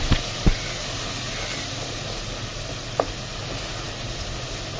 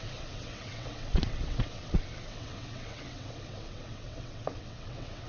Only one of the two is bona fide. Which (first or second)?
first